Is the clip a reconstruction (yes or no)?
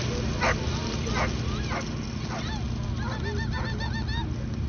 no